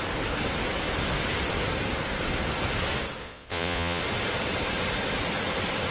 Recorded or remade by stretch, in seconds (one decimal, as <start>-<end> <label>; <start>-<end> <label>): 0.0-3.2 recorded; 3.2-4.0 remade; 4.0-5.9 recorded